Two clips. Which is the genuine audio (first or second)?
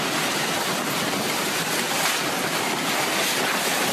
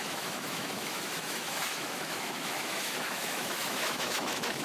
first